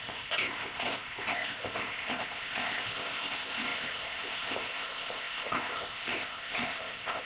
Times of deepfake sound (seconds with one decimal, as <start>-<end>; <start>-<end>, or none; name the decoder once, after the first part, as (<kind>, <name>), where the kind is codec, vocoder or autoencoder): 0.0-7.3 (codec, ZipCodec)